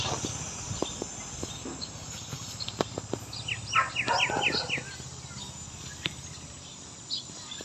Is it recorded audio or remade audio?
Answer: recorded